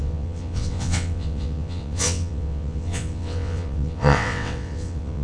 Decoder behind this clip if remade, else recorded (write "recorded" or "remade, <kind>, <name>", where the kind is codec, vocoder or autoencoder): remade, vocoder, WaveNeXt